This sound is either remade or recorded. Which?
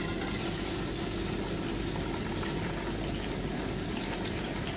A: recorded